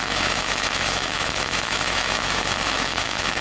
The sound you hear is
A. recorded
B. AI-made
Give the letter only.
B